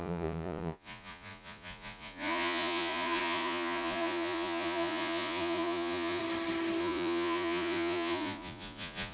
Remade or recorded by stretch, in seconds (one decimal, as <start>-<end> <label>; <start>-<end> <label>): 0.0-6.2 remade; 6.2-6.8 recorded; 6.8-9.1 remade